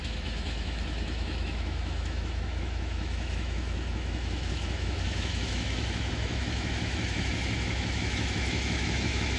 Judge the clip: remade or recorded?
remade